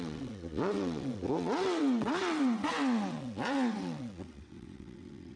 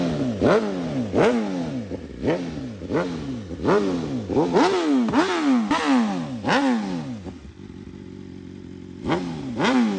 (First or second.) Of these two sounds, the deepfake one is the first